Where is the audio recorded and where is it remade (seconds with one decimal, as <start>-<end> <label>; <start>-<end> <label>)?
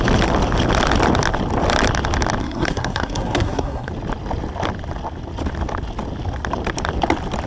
0.0-2.4 recorded; 2.4-3.9 remade; 3.9-7.5 recorded